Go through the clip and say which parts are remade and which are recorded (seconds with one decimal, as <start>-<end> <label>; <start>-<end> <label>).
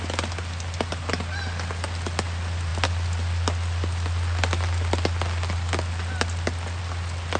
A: 0.0-7.4 recorded